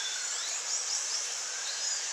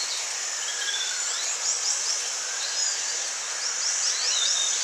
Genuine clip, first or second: second